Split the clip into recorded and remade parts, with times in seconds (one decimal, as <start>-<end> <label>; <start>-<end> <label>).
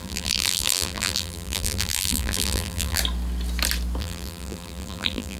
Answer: 0.0-3.0 remade; 3.0-4.0 recorded; 4.0-5.4 remade